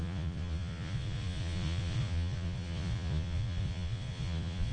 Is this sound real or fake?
fake